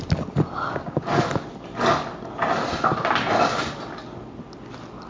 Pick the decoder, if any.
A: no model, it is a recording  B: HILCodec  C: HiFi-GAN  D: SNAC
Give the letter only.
A